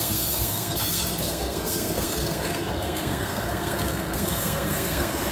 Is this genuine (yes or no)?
no